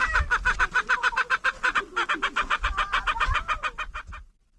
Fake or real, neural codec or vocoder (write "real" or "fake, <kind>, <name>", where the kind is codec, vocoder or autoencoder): real